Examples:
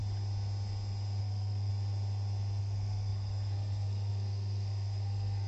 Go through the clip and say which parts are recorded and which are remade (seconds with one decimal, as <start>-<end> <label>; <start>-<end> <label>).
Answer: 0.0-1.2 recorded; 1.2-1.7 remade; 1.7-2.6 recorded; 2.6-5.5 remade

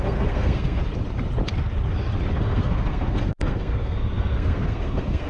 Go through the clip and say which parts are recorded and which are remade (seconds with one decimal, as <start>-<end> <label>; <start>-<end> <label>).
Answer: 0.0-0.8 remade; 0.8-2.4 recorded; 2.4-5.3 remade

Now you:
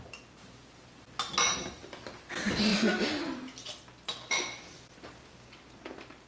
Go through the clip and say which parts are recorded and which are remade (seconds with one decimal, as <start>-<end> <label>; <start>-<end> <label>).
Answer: 0.0-6.3 recorded

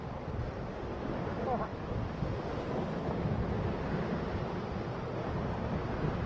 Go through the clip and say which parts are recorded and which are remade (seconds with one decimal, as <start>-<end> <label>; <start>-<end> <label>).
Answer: 0.0-6.3 recorded

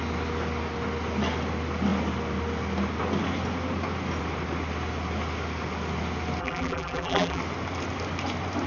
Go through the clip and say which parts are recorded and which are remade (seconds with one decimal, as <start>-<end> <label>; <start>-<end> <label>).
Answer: 0.0-6.4 recorded; 6.4-7.4 remade; 7.4-8.7 recorded

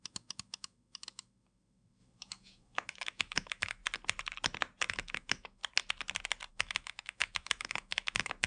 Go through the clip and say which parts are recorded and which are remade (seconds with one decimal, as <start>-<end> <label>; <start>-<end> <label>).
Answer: 0.0-3.8 remade; 3.8-4.9 recorded; 4.9-5.6 remade; 5.6-6.5 recorded; 6.5-8.5 remade

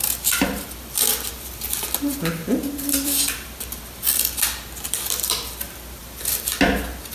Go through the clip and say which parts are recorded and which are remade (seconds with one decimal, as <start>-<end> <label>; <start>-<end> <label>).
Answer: 0.0-2.4 recorded; 2.4-3.8 remade; 3.8-7.1 recorded

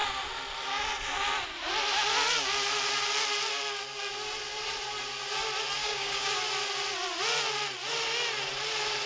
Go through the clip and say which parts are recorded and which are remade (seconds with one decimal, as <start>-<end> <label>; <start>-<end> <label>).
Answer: 0.0-5.8 recorded; 5.8-6.4 remade; 6.4-9.1 recorded